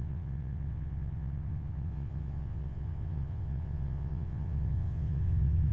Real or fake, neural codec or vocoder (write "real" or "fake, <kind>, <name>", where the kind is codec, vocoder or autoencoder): fake, vocoder, WaveNeXt